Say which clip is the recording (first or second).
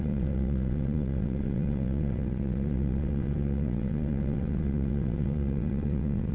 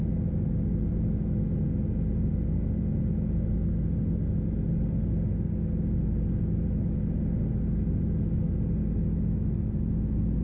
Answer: second